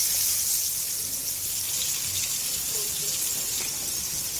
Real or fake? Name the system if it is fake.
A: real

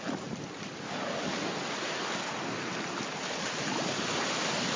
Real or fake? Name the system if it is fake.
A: real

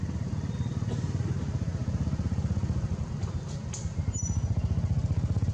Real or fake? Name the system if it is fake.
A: real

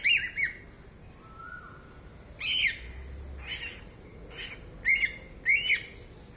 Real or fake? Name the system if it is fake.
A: real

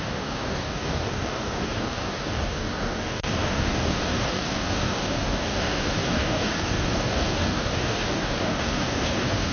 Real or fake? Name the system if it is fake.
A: fake, codec, DAC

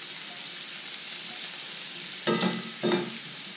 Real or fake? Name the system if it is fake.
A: real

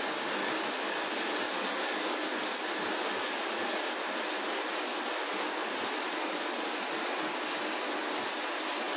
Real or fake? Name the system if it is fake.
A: real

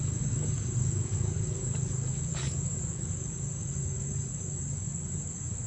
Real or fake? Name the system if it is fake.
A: fake, codec, DAC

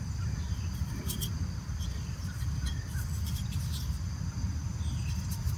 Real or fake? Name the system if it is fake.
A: real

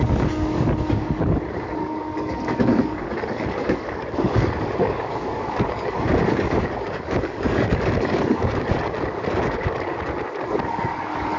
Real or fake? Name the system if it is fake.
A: fake, codec, DAC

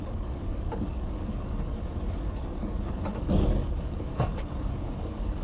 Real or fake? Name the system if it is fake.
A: fake, codec, DAC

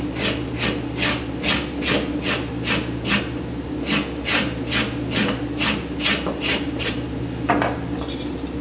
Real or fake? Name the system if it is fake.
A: real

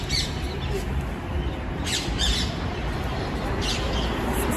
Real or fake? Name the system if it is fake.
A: real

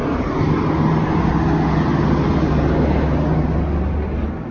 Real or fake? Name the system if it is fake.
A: real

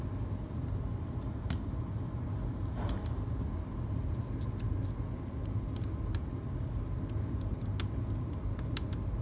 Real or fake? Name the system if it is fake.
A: real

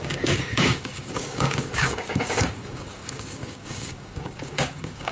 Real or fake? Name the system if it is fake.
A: fake, codec, DAC